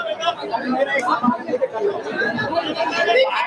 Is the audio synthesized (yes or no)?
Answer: no